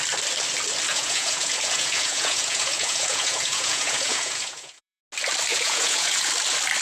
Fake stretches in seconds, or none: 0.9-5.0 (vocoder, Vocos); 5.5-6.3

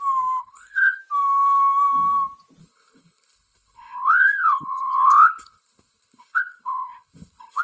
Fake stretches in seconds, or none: 0.4-1.0 (codec, HILCodec); 2.6-7.6

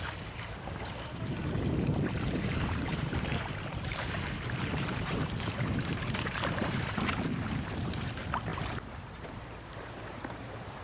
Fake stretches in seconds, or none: 0.0-10.8 (vocoder, BigVGAN v2)

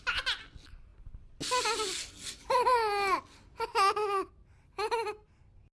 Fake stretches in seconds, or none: none